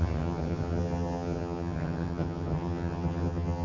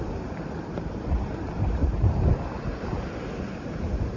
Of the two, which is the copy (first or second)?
first